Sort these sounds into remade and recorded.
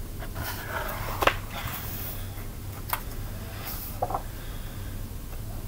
recorded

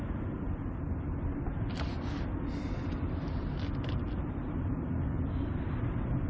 recorded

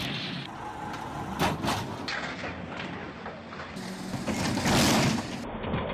recorded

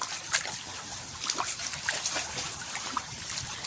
recorded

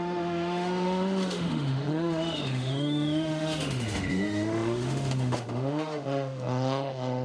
remade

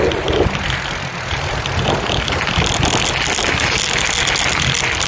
recorded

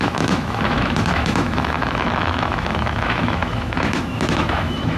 remade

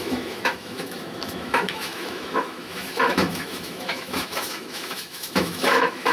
remade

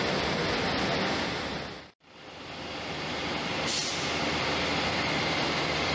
recorded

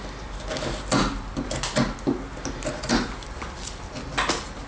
recorded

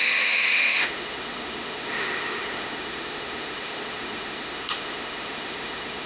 remade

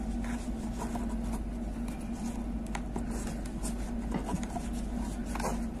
recorded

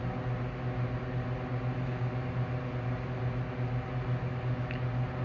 recorded